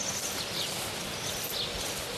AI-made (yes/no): no